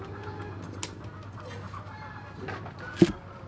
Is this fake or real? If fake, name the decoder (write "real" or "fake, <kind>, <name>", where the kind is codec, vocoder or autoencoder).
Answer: real